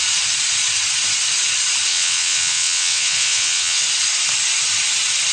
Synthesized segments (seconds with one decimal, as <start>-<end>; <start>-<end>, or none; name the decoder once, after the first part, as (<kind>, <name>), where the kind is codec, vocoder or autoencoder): 1.9-3.8 (vocoder, WaveNeXt)